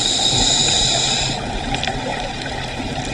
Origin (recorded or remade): recorded